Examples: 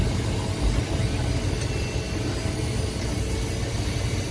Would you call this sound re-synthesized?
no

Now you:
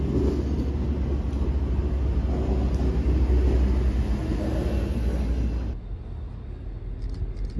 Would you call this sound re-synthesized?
no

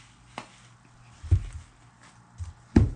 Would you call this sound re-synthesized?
no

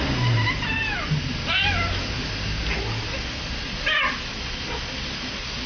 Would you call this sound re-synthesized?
no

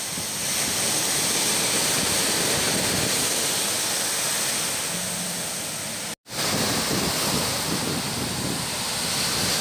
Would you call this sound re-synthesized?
no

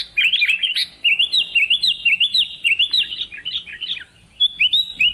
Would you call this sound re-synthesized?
no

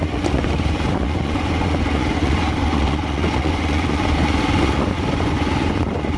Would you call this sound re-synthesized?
yes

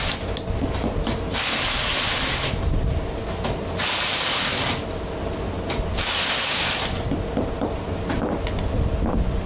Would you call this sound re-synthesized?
no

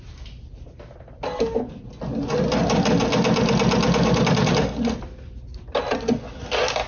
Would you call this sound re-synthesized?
no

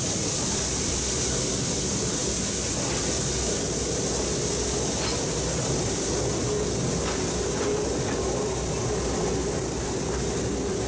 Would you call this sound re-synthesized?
no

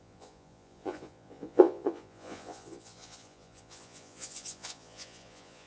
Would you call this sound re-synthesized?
yes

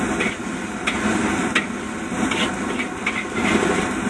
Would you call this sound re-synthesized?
no